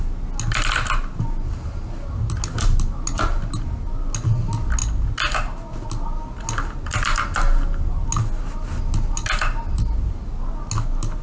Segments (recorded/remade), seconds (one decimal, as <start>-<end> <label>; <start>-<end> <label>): 0.0-11.2 recorded